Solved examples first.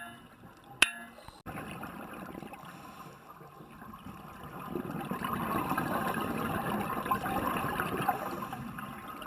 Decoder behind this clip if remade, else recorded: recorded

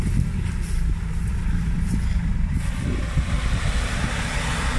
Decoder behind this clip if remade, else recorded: recorded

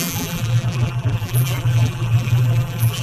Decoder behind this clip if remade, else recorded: remade, vocoder, BigVGAN v2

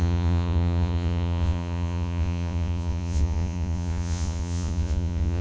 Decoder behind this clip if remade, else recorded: remade, vocoder, Vocos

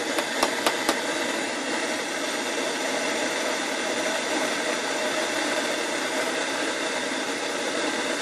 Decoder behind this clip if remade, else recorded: remade, vocoder, BigVGAN v2